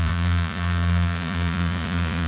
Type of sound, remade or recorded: remade